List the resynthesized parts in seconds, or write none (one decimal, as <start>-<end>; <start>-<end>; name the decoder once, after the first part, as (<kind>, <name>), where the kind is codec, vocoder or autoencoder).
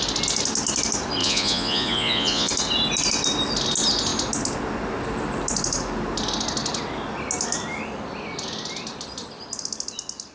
1.2-2.5 (vocoder, Vocos)